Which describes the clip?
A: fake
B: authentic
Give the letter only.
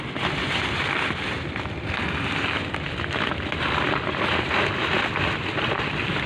B